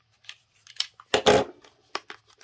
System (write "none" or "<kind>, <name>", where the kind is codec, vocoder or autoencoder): none